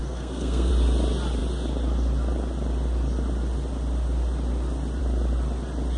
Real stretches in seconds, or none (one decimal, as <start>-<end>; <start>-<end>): 0.7-6.0